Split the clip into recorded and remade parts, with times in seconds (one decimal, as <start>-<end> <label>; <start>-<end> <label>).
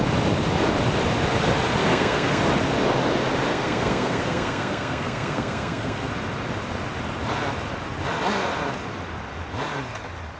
0.0-1.8 recorded; 1.8-2.4 remade; 2.4-3.5 recorded; 3.5-6.1 remade; 6.1-10.4 recorded